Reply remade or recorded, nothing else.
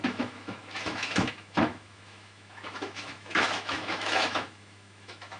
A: remade